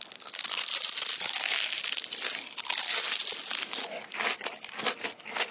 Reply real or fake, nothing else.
real